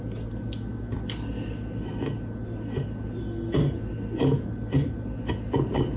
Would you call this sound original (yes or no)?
yes